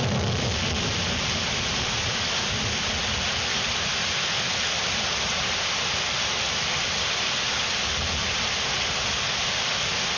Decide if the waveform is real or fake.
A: real